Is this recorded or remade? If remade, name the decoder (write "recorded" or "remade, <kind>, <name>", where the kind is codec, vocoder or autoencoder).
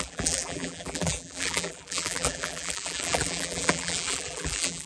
remade, vocoder, BigVGAN v2